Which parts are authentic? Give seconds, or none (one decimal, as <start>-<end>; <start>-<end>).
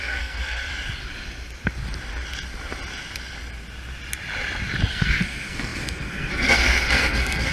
0.7-4.9